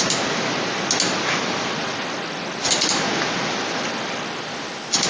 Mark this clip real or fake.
real